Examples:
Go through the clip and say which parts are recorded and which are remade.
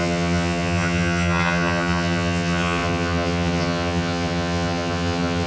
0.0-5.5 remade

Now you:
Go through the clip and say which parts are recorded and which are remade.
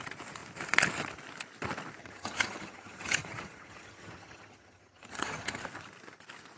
0.0-2.0 recorded; 2.0-5.6 remade; 5.6-6.6 recorded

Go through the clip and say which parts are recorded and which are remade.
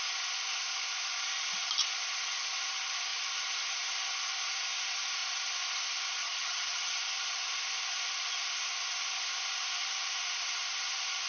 0.0-6.2 recorded; 6.2-6.9 remade; 6.9-11.3 recorded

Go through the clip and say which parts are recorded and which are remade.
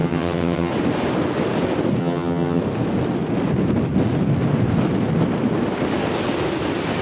0.0-0.7 remade; 0.7-2.0 recorded; 2.0-2.6 remade; 2.6-7.0 recorded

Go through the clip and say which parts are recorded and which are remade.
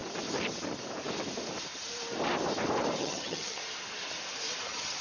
0.0-3.0 recorded; 3.0-3.6 remade; 3.6-4.6 recorded; 4.6-5.0 remade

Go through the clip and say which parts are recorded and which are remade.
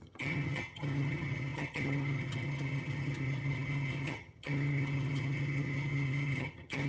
0.0-6.9 remade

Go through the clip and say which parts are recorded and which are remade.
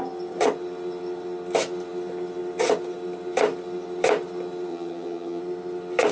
0.0-4.7 recorded; 4.7-5.4 remade; 5.4-6.1 recorded